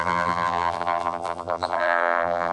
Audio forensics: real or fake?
fake